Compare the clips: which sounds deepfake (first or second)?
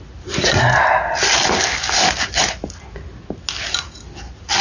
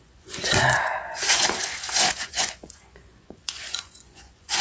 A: second